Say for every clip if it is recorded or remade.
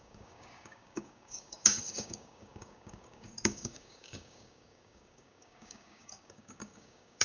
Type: remade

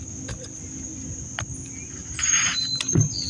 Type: recorded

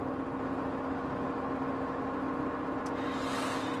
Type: recorded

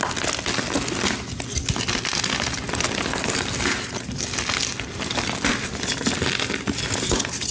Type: recorded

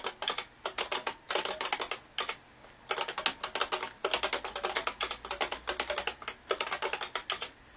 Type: recorded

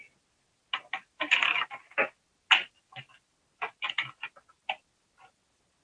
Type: recorded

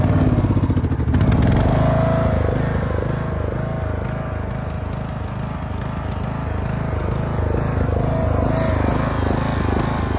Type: recorded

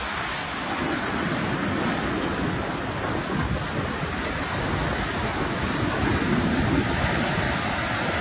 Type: recorded